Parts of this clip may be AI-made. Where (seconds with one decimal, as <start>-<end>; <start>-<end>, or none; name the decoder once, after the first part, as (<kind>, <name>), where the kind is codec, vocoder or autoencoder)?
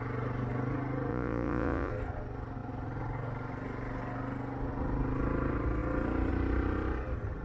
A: 1.1-1.9 (vocoder, Vocos)